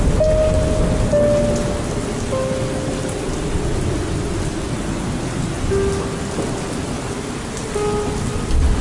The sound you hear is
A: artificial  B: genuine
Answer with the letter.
B